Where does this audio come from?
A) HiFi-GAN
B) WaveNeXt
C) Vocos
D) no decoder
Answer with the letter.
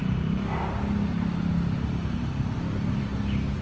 D